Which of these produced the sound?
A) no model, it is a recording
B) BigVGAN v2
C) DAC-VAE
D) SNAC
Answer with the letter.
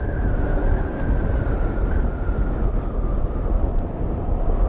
A